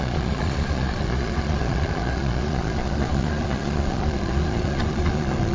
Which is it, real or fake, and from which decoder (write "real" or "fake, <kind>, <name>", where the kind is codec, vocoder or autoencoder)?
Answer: fake, vocoder, Vocos